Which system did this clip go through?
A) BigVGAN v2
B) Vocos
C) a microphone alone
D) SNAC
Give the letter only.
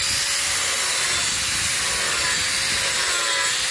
C